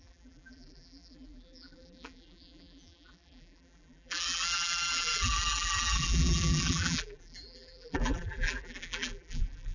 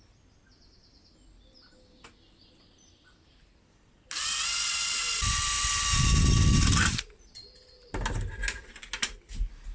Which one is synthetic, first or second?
first